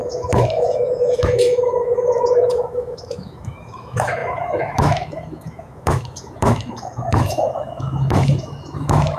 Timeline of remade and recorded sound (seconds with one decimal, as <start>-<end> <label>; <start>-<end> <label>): 0.0-9.2 remade